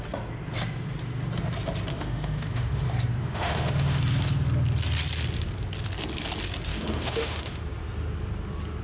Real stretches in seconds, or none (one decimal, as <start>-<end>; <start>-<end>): 0.0-1.9; 2.8-3.2; 4.0-6.7; 7.6-8.8

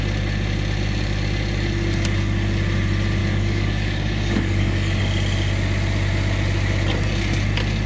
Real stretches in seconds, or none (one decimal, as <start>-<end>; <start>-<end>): 0.0-3.2; 5.0-7.9

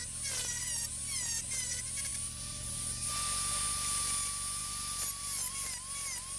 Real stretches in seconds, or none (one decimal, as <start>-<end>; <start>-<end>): 0.0-2.1; 3.6-4.6; 5.5-6.4

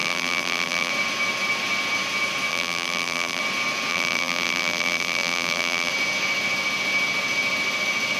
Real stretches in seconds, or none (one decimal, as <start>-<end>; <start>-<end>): 0.9-2.5; 3.4-3.9; 5.9-8.2